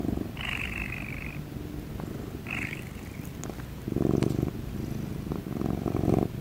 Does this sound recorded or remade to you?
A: recorded